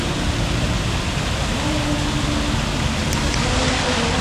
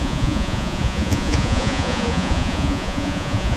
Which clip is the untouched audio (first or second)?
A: first